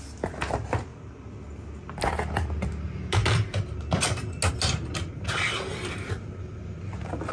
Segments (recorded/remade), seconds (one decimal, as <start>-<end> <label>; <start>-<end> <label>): 0.0-7.3 recorded